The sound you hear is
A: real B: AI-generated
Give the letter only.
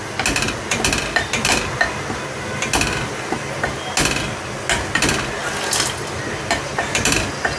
A